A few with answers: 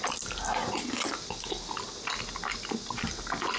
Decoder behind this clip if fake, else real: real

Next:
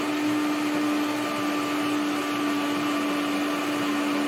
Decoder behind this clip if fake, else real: real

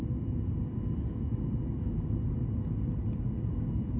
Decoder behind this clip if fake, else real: real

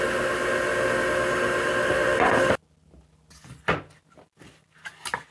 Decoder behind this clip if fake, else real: real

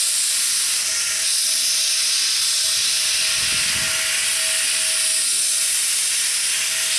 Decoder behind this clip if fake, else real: real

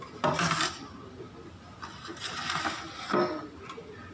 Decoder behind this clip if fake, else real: real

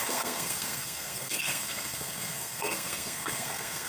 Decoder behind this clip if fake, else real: fake, codec, SNAC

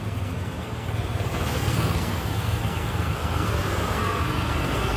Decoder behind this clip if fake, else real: fake, codec, SNAC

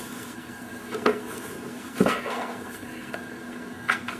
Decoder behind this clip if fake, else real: fake, codec, SNAC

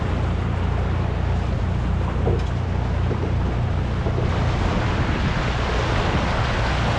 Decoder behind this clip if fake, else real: real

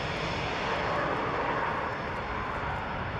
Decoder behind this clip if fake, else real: real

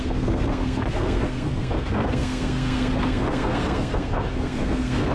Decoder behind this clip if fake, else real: fake, codec, SNAC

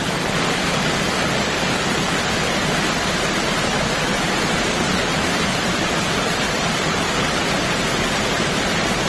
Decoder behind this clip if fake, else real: real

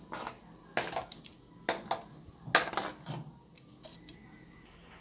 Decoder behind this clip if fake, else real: real